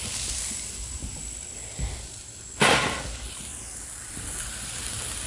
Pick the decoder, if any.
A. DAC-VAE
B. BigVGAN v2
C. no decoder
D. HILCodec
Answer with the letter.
C